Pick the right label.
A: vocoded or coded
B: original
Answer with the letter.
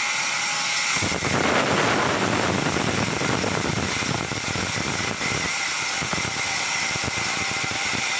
B